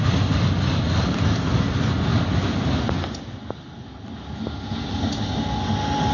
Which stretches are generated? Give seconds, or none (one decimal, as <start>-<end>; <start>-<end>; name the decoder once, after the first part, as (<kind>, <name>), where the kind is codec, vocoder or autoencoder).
none